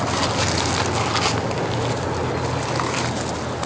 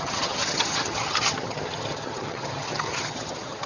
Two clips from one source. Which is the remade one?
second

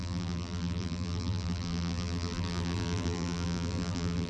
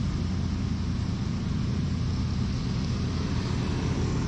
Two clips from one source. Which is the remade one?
first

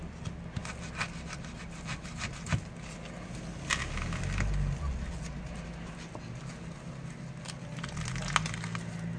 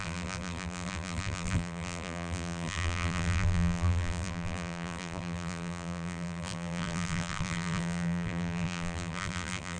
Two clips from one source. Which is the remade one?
second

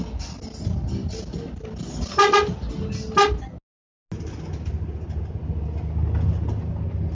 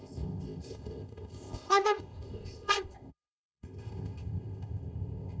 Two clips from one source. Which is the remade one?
second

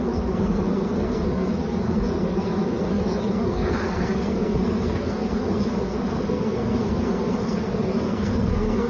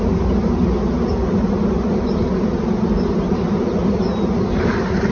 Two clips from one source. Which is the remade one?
first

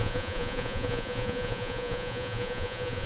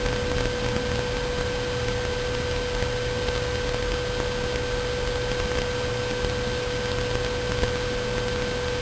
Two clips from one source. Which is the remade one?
first